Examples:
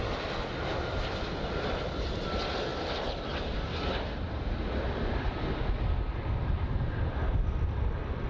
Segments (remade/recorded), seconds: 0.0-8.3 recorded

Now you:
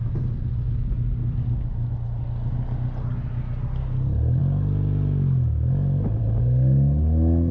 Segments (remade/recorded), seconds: 0.0-7.5 recorded

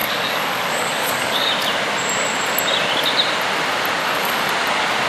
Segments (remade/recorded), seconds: 0.0-1.5 remade; 1.5-4.0 recorded; 4.0-4.5 remade; 4.5-5.1 recorded

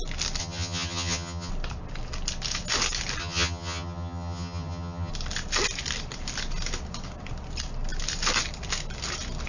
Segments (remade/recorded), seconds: 0.0-0.4 recorded; 0.4-1.5 remade; 1.5-3.2 recorded; 3.2-5.1 remade; 5.1-9.5 recorded

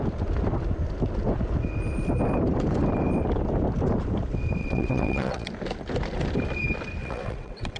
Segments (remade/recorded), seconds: 0.0-4.6 recorded; 4.6-5.5 remade; 5.5-7.0 recorded; 7.0-7.8 remade